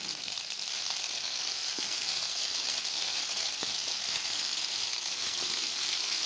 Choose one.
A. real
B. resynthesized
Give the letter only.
B